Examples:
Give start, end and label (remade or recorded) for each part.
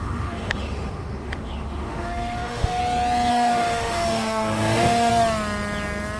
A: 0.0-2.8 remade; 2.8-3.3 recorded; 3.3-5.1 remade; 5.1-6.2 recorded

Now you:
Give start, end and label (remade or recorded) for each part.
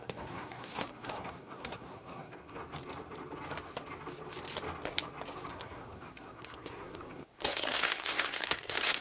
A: 0.0-2.6 remade; 2.6-5.5 recorded; 5.5-9.0 remade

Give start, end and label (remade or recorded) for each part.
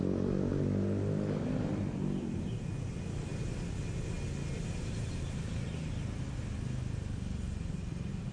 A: 0.0-8.3 recorded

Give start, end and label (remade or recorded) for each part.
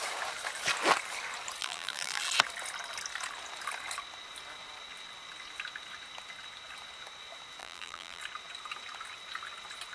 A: 0.0-1.6 recorded; 1.6-2.2 remade; 2.2-7.6 recorded; 7.6-8.2 remade; 8.2-9.9 recorded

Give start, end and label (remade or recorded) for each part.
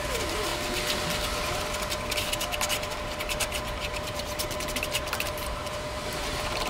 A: 0.0-0.5 remade; 0.5-3.2 recorded; 3.2-6.7 remade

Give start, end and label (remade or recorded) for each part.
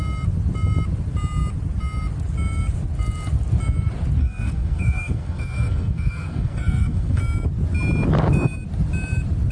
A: 0.0-4.2 recorded; 4.2-7.2 remade; 7.2-9.5 recorded